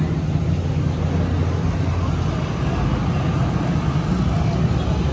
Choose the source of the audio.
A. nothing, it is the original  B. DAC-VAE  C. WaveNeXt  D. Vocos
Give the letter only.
A